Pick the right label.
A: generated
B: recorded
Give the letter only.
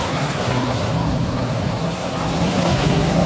A